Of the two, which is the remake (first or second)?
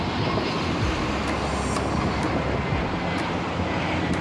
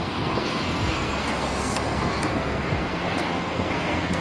second